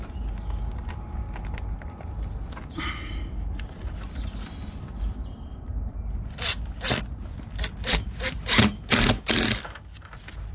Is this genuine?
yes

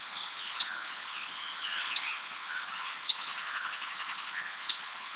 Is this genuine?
no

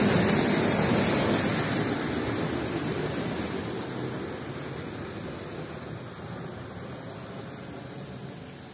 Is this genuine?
yes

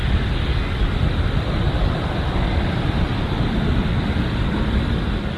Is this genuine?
yes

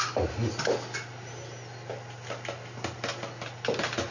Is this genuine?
yes